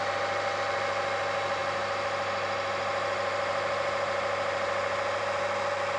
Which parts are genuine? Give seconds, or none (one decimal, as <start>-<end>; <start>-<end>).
0.0-6.0